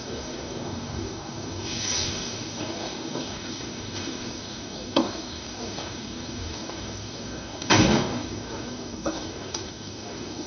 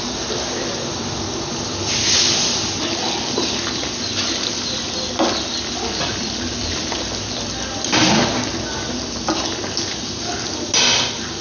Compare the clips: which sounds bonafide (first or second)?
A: second